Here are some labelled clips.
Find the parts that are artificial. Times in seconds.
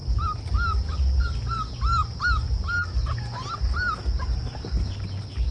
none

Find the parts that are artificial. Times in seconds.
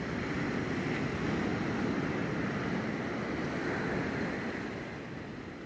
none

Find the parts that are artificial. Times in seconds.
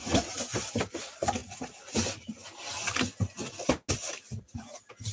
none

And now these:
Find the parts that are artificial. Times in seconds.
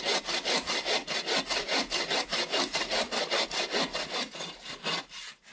none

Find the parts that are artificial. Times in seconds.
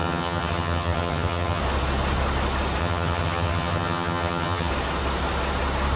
0.0-1.6; 2.8-4.7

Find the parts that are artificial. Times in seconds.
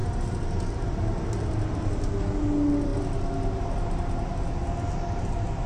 none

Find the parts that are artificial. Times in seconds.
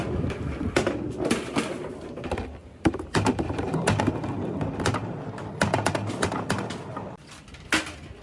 2.6-4.0